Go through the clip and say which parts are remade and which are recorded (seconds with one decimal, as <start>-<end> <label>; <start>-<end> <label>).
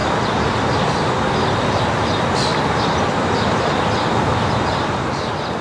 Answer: 0.0-1.8 remade; 1.8-2.5 recorded; 2.5-3.9 remade; 3.9-5.6 recorded